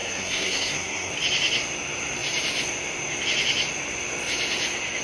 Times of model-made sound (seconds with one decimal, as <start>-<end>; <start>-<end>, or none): 0.0-1.1